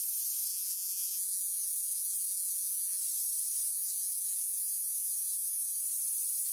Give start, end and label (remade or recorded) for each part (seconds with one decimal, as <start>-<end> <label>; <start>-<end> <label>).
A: 0.0-0.5 recorded; 0.5-3.0 remade; 3.0-3.7 recorded; 3.7-5.8 remade; 5.8-6.5 recorded